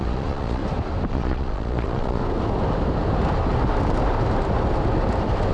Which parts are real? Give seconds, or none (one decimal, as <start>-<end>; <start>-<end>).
0.6-1.1; 2.2-5.5